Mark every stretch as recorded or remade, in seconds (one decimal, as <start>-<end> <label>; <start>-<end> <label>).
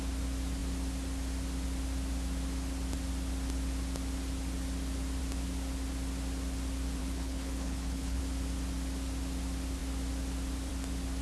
0.0-7.0 recorded; 7.0-8.2 remade; 8.2-11.2 recorded